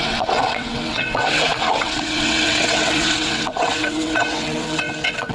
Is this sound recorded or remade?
remade